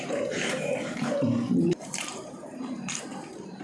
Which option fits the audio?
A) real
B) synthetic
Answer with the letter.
B